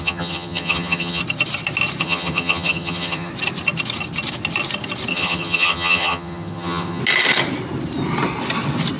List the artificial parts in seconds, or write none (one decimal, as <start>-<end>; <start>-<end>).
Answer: 0.0-1.2; 2.0-3.3; 5.1-7.0